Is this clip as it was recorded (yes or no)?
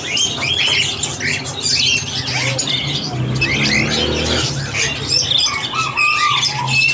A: yes